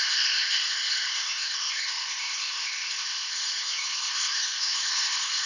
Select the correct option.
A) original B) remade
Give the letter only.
B